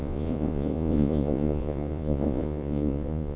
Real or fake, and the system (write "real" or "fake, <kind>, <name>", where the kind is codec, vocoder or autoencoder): fake, vocoder, Vocos